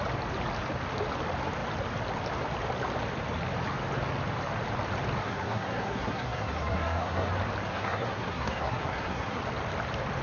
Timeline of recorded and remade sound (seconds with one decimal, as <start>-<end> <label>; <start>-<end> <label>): 0.0-5.2 recorded; 5.2-7.3 remade; 7.3-7.7 recorded; 7.7-9.4 remade; 9.4-10.2 recorded